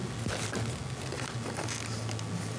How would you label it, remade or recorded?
recorded